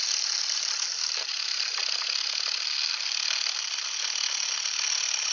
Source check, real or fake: real